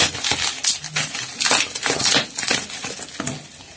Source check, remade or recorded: recorded